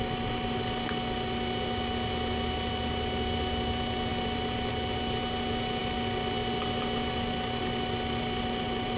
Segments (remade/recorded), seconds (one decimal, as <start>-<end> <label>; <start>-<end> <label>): 0.0-9.0 recorded

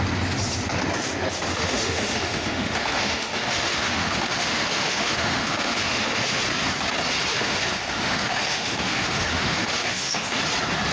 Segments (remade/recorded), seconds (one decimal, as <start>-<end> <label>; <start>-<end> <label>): 0.0-1.5 recorded; 1.5-6.4 remade; 6.4-7.3 recorded; 7.3-10.4 remade; 10.4-10.9 recorded

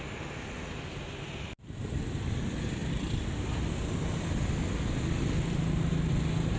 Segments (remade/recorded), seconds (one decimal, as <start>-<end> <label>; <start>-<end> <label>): 0.0-6.6 recorded

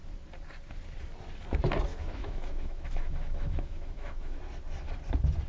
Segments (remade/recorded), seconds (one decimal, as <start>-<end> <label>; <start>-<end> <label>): 0.0-1.9 recorded; 1.9-4.4 remade; 4.4-5.5 recorded

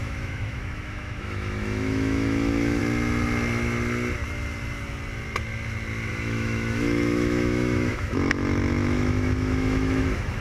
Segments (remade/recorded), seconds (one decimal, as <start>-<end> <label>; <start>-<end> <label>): 0.0-2.8 remade; 2.8-6.1 recorded; 6.1-10.4 remade

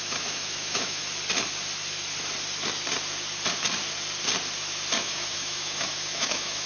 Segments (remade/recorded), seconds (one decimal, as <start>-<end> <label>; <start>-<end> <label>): 0.0-1.0 remade; 1.0-5.0 recorded; 5.0-6.7 remade